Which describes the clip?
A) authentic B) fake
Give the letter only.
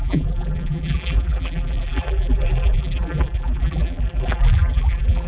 B